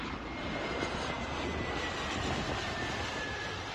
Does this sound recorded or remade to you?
remade